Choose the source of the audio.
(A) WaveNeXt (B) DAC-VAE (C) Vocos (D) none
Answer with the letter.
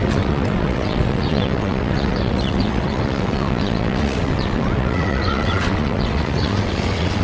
A